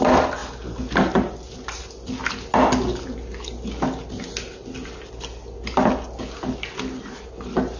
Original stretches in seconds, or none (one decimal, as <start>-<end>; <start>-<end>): 0.0-7.8